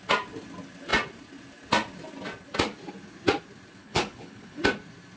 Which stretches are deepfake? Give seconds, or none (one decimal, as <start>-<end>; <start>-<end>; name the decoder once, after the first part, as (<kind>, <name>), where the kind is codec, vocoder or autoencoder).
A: 3.8-4.6 (codec, HILCodec)